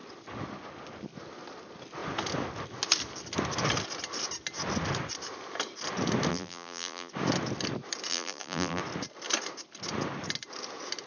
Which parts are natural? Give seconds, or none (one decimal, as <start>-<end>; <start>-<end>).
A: 0.0-6.3; 7.1-8.1; 8.8-11.1